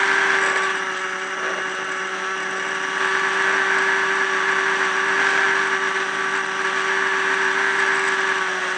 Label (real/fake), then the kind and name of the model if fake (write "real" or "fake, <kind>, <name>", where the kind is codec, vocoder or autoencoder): real